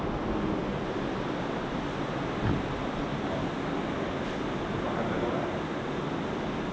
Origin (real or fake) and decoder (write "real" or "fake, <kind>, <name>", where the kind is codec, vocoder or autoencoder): real